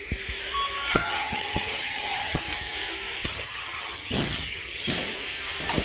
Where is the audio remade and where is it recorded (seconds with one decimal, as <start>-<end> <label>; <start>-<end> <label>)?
0.0-0.9 recorded; 0.9-2.4 remade; 2.4-3.2 recorded; 3.2-4.9 remade; 4.9-5.8 recorded